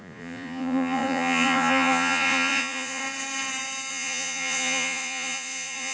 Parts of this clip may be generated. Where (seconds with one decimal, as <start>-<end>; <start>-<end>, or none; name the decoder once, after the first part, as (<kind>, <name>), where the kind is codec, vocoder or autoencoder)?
0.0-3.0 (vocoder, Vocos); 3.9-5.9